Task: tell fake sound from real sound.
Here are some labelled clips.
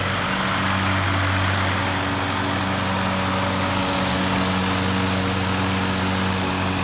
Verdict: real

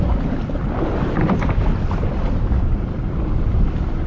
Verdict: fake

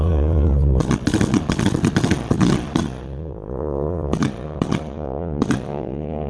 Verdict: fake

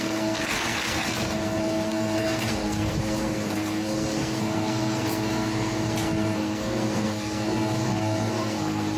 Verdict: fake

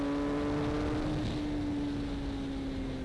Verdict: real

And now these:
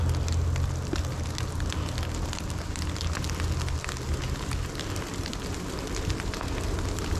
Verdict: real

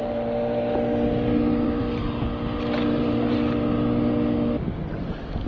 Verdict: real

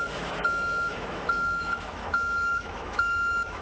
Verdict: fake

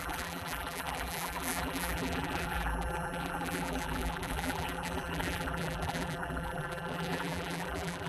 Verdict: fake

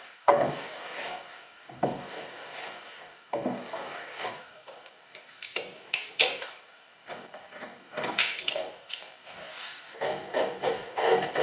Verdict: fake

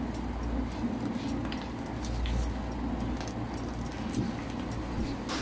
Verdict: real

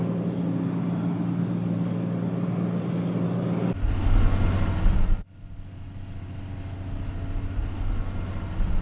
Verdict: real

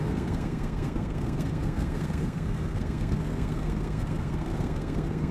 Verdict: fake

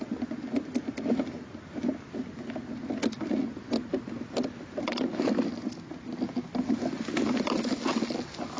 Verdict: real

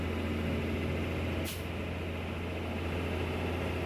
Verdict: real